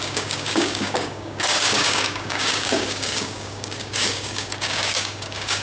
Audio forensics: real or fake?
fake